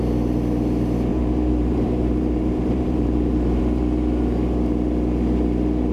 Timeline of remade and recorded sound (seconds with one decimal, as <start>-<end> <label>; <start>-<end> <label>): 0.0-1.1 recorded; 1.1-3.6 remade; 3.6-5.9 recorded